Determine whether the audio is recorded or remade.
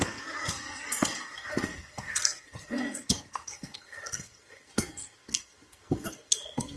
remade